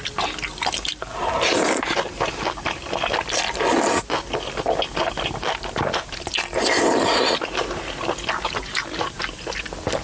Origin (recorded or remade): recorded